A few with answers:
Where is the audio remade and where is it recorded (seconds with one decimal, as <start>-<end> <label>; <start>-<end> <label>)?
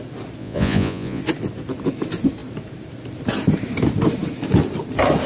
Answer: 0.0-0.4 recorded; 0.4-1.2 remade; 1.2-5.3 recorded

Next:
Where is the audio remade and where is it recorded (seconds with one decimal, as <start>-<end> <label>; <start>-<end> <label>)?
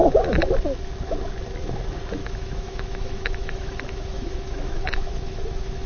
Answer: 0.0-2.2 recorded; 2.2-5.9 remade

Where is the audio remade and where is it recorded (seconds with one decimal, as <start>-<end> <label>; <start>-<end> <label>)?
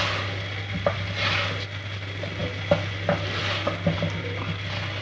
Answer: 0.0-5.0 recorded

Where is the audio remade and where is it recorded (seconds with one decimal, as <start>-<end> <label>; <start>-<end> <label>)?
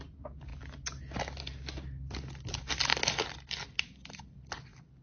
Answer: 0.0-5.0 recorded